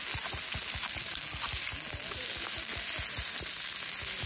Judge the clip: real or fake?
real